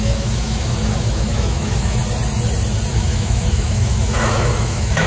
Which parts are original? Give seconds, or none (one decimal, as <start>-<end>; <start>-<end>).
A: 2.0-2.9